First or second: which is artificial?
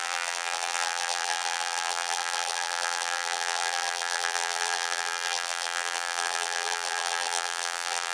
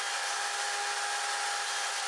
first